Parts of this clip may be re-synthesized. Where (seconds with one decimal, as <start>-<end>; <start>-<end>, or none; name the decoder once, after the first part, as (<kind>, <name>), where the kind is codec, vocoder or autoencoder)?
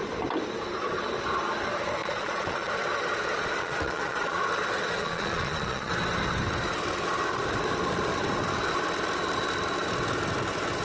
2.0-2.7 (vocoder, Vocos); 3.6-4.4; 5.0-5.9